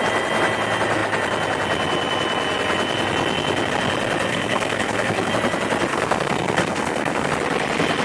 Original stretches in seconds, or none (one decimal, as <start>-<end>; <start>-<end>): 0.0-4.3; 5.3-5.9; 7.3-8.0